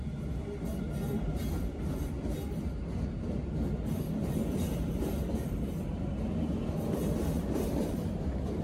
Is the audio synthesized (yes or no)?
no